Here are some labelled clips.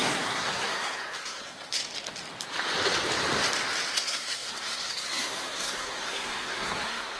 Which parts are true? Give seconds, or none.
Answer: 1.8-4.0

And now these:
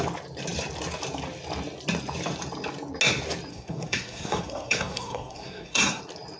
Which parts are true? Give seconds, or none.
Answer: 0.0-3.5; 6.0-6.4

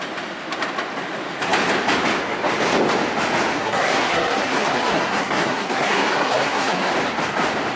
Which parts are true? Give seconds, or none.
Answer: 0.0-3.5; 6.9-7.8